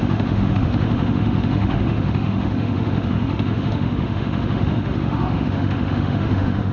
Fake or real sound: fake